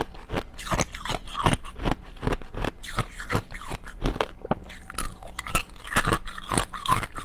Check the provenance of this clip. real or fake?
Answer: real